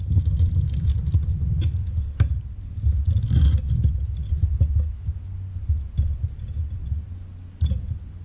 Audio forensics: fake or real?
real